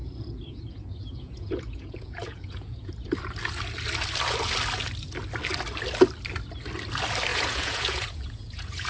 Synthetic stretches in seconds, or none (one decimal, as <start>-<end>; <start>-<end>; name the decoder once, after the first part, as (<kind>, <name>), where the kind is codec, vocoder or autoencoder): 0.0-2.9 (vocoder, Vocos); 7.3-8.9